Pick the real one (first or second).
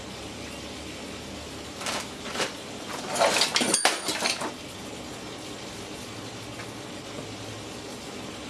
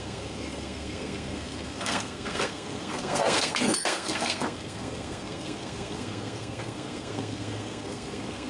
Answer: first